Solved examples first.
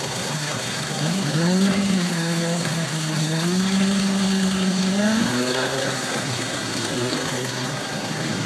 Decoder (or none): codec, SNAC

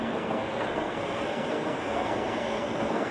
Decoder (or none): codec, SNAC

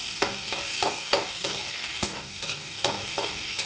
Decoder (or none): codec, DAC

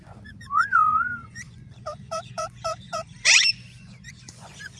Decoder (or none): vocoder, Vocos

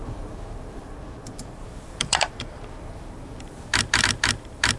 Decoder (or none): vocoder, BigVGAN v2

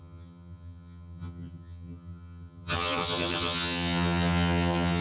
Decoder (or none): vocoder, HiFi-GAN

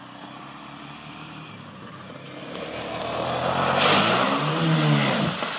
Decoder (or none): none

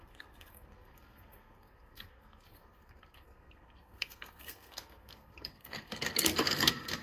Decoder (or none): codec, SNAC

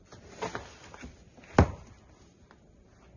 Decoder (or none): none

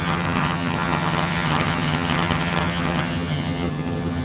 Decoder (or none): vocoder, HiFi-GAN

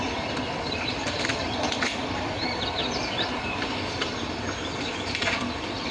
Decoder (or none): vocoder, BigVGAN v2